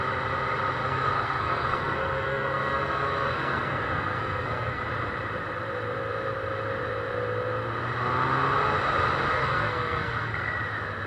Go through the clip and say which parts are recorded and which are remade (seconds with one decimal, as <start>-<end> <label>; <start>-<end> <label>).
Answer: 0.0-0.8 recorded; 0.8-4.8 remade; 4.8-9.3 recorded; 9.3-10.5 remade; 10.5-11.1 recorded